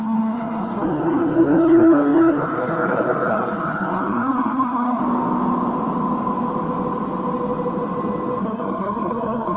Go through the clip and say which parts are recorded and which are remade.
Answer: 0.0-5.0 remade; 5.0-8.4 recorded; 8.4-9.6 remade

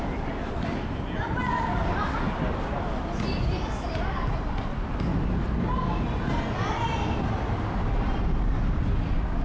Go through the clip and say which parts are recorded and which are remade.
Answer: 0.0-9.4 recorded